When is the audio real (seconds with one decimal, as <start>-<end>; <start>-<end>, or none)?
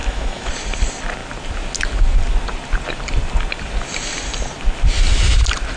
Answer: 0.5-5.8